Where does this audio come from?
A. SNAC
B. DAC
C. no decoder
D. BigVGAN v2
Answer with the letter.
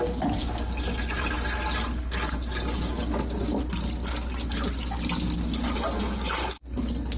C